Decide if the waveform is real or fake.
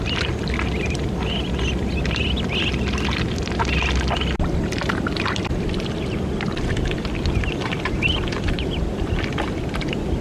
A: real